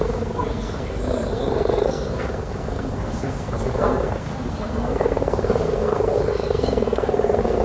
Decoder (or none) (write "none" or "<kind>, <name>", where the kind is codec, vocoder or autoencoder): codec, SNAC